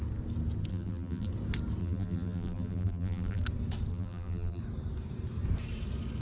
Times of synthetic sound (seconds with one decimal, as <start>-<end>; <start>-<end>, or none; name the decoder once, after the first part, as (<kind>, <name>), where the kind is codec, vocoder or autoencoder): 0.7-1.3 (vocoder, BigVGAN v2); 1.8-3.4; 3.9-4.6